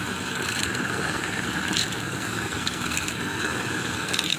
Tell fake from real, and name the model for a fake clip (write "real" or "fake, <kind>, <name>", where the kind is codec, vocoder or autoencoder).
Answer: fake, codec, SNAC